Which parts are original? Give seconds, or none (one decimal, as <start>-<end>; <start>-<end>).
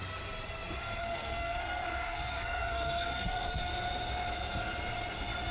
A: 0.0-1.0; 3.7-5.5